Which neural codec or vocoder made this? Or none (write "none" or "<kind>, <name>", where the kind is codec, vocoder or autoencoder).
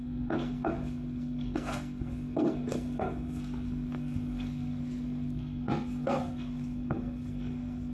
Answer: codec, SNAC